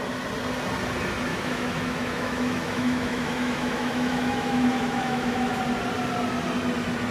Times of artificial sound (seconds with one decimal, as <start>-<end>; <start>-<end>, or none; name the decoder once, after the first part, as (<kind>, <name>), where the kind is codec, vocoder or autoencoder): 1.3-5.6 (autoencoder, DAC-VAE)

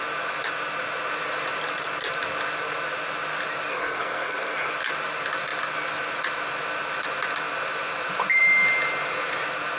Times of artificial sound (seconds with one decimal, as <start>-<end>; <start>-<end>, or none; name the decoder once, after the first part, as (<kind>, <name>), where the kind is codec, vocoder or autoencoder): 3.7-4.7 (codec, SNAC)

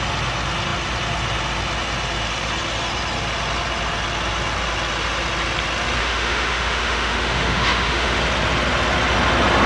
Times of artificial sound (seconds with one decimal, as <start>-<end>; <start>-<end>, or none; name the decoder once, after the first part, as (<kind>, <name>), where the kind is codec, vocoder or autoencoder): 6.0-8.2 (autoencoder, DAC-VAE)

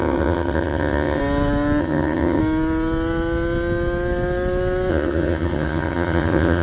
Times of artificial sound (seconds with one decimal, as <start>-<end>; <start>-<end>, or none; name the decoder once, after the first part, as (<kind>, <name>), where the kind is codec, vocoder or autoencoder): 0.0-1.2 (vocoder, HiFi-GAN); 1.8-2.4; 4.9-6.6